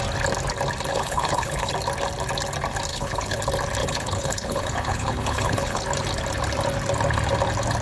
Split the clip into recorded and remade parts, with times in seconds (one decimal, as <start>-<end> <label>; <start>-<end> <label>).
0.0-0.9 recorded; 0.9-1.7 remade; 1.7-2.9 recorded; 2.9-3.4 remade; 3.4-3.8 recorded; 3.8-5.8 remade; 5.8-7.8 recorded